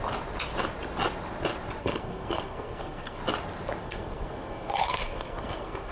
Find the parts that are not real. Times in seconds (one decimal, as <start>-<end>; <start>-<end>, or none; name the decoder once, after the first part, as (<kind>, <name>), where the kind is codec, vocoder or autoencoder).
1.8-3.2 (codec, SNAC); 3.8-5.9

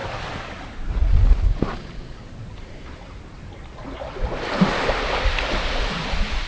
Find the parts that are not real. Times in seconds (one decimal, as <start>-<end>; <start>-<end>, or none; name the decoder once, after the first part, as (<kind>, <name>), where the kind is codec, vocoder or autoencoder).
none

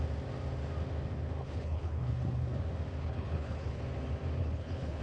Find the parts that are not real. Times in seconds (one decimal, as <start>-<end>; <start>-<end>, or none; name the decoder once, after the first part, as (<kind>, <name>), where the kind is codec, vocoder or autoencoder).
1.4-2.1 (codec, HILCodec); 3.0-3.8; 4.4-5.0

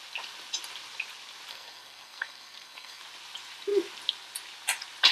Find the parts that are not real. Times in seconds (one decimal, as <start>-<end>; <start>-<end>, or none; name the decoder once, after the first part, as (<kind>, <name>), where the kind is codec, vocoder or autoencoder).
1.5-3.0 (codec, SNAC)

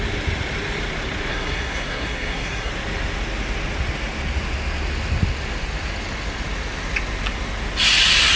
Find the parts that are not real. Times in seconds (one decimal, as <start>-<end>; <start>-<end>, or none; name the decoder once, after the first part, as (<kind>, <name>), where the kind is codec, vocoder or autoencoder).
1.3-2.7 (codec, SNAC)

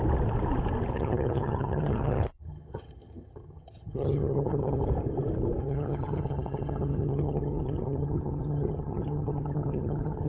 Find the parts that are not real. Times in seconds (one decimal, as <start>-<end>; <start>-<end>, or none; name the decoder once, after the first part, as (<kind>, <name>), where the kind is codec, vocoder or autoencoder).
0.9-4.8 (vocoder, HiFi-GAN); 5.6-10.3

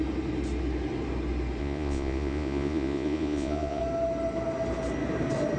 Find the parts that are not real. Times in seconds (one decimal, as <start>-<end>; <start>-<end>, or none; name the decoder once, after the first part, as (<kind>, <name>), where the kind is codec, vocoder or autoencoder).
1.6-3.8 (vocoder, Vocos)

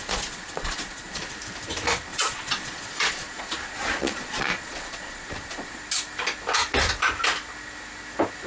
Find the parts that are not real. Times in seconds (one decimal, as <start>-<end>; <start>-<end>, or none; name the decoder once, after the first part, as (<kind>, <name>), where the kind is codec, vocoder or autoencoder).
0.0-1.2 (vocoder, Vocos); 2.1-5.8